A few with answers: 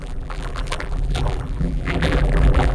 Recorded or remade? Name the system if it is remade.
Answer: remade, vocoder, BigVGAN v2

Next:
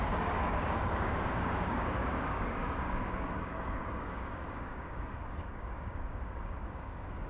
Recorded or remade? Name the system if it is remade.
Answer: remade, codec, DAC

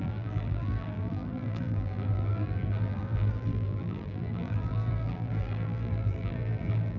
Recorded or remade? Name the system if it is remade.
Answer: remade, vocoder, BigVGAN v2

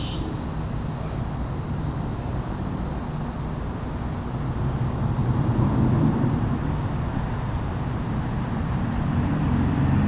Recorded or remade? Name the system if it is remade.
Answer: recorded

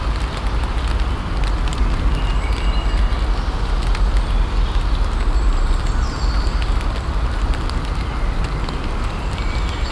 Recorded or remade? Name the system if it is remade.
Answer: recorded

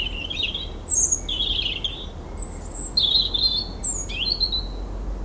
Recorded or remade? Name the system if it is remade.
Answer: recorded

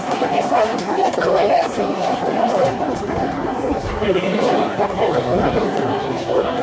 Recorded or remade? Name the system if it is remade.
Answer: remade, codec, SNAC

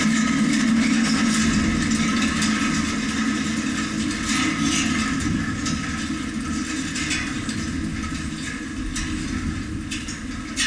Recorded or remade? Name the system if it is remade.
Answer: recorded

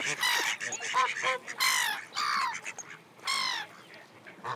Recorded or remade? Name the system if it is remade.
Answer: remade, vocoder, BigVGAN v2